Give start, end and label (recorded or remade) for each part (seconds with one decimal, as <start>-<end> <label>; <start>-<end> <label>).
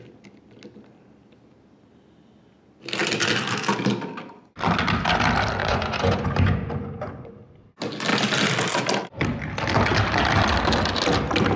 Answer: 0.0-5.6 recorded; 5.6-7.3 remade; 7.3-11.6 recorded